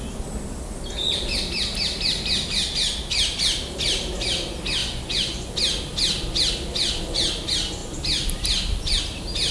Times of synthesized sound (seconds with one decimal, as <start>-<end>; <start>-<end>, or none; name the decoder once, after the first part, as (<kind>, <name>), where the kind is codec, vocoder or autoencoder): 4.8-5.5 (vocoder, Vocos)

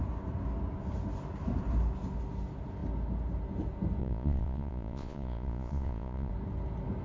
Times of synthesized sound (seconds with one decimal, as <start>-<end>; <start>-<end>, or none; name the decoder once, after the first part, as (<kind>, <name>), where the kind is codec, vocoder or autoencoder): 4.0-6.3 (vocoder, Vocos)